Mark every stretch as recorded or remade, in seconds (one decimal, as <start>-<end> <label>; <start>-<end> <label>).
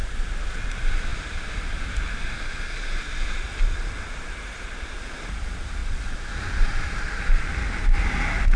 0.0-1.1 recorded; 1.1-5.1 remade; 5.1-5.8 recorded; 5.8-7.6 remade; 7.6-8.6 recorded